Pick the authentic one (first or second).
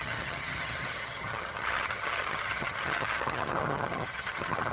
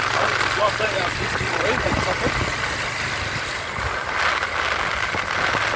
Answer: second